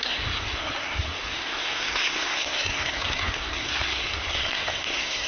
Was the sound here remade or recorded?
remade